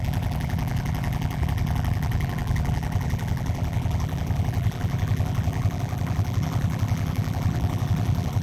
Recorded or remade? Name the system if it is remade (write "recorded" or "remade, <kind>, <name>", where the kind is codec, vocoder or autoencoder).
remade, vocoder, BigVGAN v2